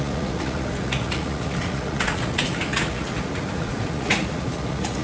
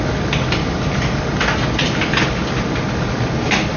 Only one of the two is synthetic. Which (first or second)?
first